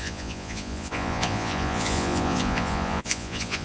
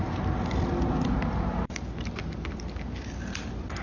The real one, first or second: second